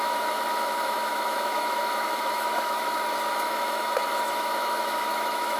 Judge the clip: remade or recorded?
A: remade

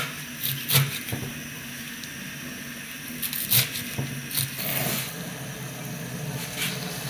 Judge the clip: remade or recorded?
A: recorded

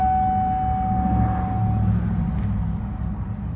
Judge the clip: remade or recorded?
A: recorded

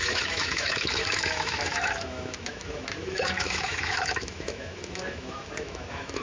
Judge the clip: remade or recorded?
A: remade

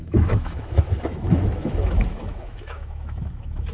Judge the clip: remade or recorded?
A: remade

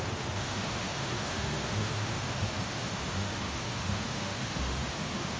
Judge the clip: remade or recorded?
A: remade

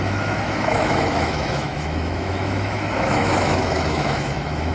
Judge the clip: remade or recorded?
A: remade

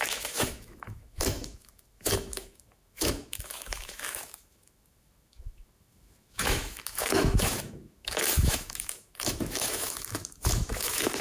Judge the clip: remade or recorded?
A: remade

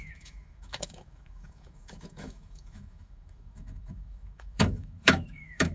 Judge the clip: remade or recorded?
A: remade